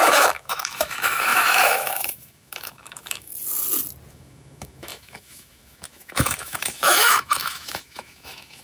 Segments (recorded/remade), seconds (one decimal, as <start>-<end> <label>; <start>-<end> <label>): 0.0-3.3 remade; 3.3-4.1 recorded; 4.1-8.6 remade